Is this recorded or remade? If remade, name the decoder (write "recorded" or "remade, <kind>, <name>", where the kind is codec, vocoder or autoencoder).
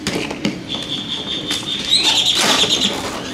recorded